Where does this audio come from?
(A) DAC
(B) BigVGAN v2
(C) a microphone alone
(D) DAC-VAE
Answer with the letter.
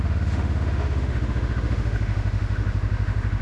D